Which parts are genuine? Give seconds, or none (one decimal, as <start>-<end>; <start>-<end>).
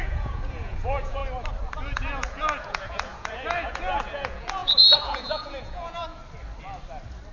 1.2-1.8; 6.2-7.3